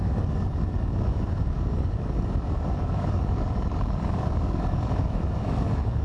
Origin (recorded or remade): remade